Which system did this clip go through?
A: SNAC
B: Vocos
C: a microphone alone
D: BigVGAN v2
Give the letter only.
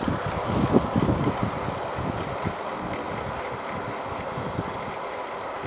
C